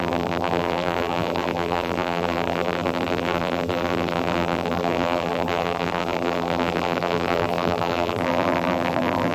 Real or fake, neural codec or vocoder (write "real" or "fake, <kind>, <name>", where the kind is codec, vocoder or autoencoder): fake, vocoder, BigVGAN v2